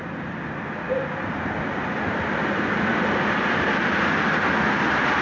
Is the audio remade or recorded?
recorded